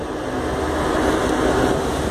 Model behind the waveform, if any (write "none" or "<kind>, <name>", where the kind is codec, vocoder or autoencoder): none